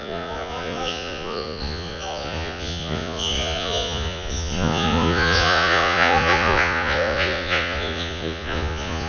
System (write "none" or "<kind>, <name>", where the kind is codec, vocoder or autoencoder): vocoder, Vocos